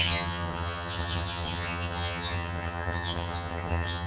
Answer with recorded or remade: remade